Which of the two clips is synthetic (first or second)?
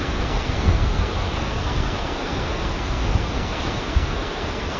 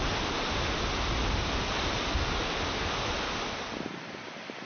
first